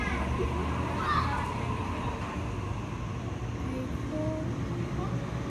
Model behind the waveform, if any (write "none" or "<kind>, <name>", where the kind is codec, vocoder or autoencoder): none